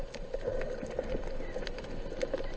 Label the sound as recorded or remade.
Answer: recorded